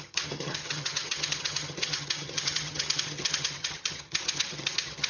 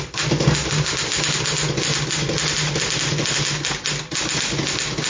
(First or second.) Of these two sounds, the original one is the second